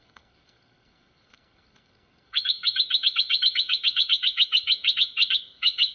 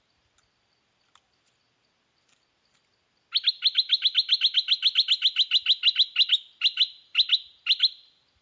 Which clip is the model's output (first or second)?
first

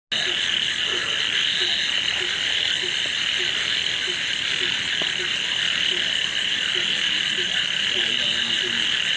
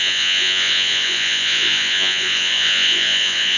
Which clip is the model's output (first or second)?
second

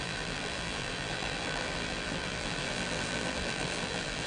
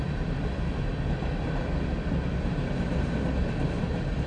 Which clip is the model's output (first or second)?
first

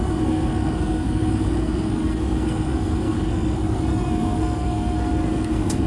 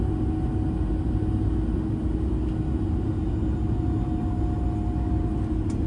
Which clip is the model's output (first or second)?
first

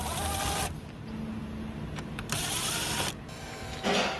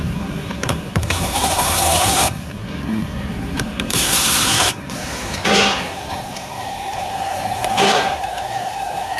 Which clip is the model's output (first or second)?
second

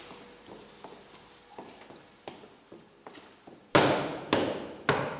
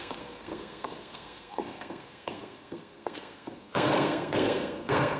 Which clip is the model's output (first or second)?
second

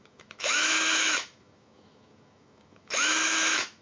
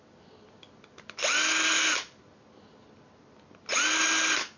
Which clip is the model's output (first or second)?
first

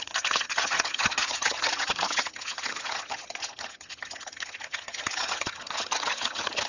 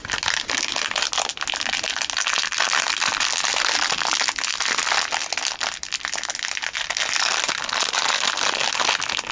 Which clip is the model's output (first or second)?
first